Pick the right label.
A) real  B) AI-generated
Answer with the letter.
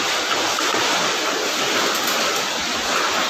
A